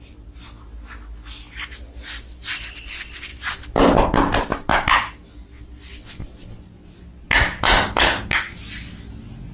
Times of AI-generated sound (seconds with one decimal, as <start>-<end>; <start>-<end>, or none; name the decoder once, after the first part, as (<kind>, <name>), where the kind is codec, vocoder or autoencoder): none